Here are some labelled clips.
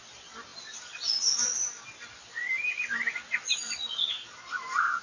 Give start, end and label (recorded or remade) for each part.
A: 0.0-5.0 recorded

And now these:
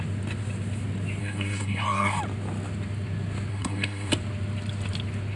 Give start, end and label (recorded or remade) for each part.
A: 0.0-1.2 recorded; 1.2-2.2 remade; 2.2-3.5 recorded; 3.5-4.1 remade; 4.1-5.4 recorded